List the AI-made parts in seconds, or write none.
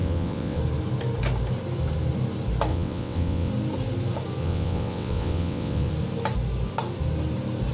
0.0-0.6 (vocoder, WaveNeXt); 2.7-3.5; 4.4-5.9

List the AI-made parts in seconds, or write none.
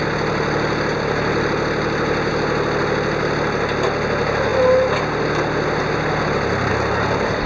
none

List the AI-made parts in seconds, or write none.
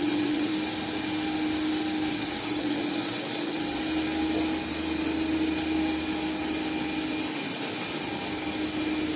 0.0-0.5 (vocoder, WaveNeXt); 2.1-3.8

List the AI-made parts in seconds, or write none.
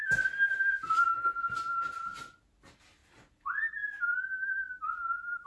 none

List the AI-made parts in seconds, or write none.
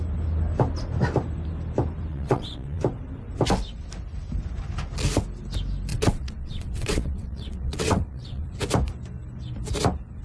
2.1-2.8 (vocoder, WaveNeXt); 5.9-8.5